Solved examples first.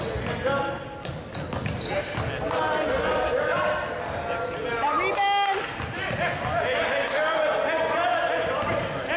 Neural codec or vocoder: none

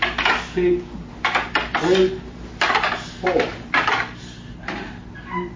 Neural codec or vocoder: none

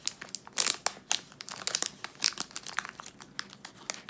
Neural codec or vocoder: none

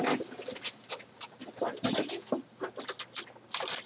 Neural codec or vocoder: none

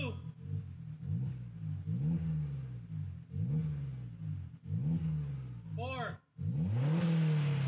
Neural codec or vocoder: none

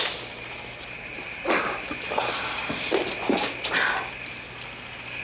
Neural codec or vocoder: none